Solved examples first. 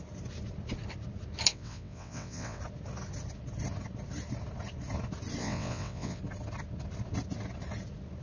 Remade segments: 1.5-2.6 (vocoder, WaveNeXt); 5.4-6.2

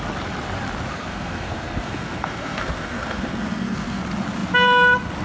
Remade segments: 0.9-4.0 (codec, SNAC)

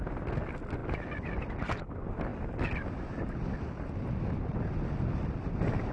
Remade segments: none